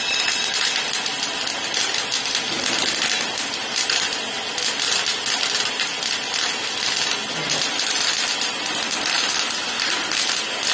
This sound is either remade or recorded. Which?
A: recorded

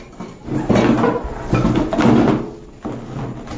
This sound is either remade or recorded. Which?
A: recorded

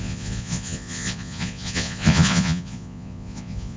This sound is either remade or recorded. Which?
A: remade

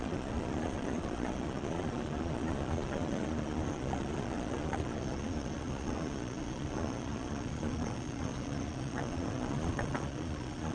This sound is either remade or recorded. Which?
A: remade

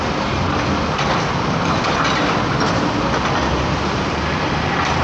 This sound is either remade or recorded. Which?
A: recorded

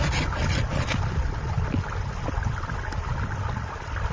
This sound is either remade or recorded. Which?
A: recorded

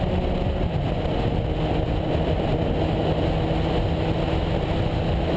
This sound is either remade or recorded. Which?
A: recorded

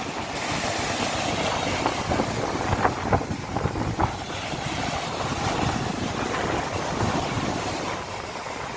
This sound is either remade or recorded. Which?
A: recorded